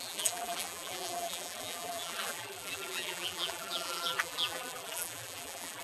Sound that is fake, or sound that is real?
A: fake